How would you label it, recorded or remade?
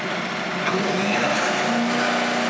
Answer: recorded